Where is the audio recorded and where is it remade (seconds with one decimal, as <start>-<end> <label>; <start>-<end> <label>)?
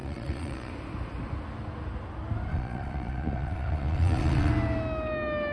0.0-0.7 remade; 0.7-2.5 recorded; 2.5-4.5 remade; 4.5-5.5 recorded